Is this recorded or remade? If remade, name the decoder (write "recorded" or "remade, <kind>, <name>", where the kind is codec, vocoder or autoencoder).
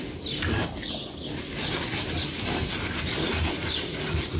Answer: recorded